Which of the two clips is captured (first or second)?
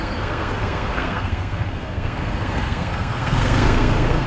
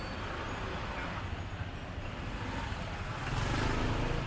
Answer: second